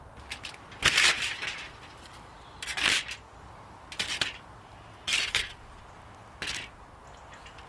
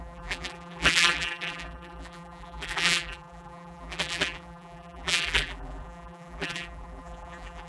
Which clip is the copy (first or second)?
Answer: second